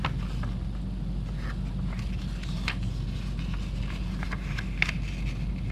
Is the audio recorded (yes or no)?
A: yes